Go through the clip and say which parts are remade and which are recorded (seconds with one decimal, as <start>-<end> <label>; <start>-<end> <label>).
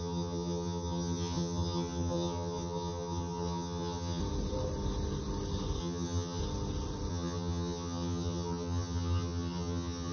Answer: 0.0-4.2 remade; 4.2-5.8 recorded; 5.8-6.4 remade; 6.4-7.1 recorded; 7.1-10.1 remade